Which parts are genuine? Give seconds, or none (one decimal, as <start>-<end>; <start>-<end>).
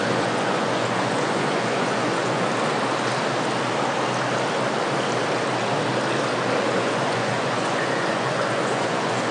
2.5-6.7